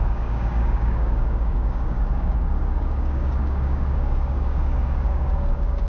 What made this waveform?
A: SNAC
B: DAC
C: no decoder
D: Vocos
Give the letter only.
B